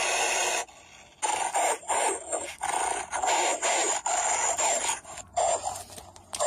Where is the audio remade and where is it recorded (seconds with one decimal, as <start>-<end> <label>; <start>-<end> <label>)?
0.0-6.5 recorded